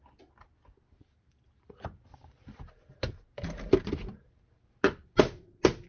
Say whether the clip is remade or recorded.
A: recorded